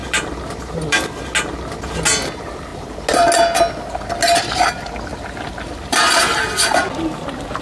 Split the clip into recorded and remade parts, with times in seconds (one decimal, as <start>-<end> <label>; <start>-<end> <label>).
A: 0.0-1.2 remade; 1.2-5.1 recorded; 5.1-6.2 remade; 6.2-7.6 recorded